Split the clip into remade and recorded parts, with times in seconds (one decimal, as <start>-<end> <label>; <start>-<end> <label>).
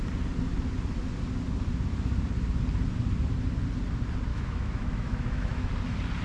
0.0-4.3 recorded; 4.3-5.7 remade; 5.7-6.2 recorded